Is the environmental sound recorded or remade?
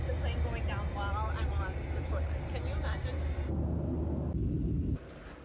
recorded